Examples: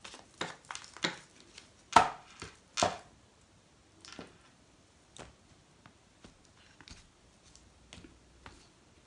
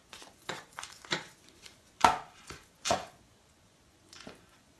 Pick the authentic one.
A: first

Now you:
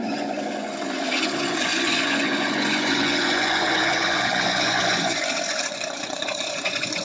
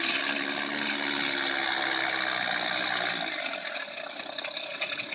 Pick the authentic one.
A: second